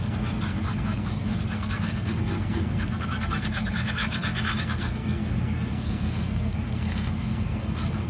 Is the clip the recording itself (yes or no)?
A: no